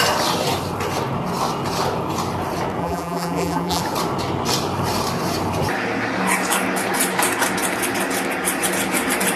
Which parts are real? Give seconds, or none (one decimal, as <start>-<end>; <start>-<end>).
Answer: 0.0-2.8; 3.8-9.4